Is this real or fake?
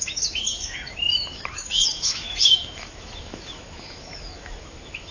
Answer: fake